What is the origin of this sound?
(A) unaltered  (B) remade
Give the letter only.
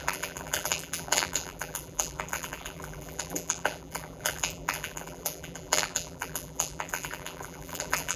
B